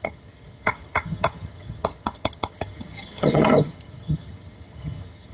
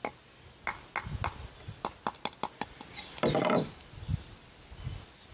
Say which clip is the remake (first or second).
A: first